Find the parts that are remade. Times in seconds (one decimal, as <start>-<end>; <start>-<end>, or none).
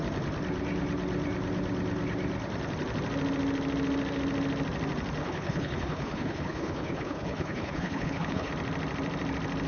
5.2-8.5